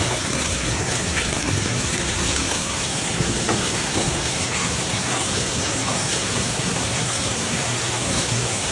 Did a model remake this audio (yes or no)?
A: yes